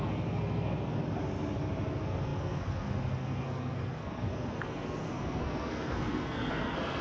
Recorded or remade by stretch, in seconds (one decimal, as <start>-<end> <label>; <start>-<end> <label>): 0.0-1.0 remade; 1.0-1.9 recorded; 1.9-7.0 remade